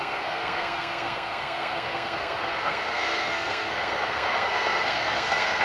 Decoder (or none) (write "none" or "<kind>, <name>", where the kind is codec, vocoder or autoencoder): codec, SNAC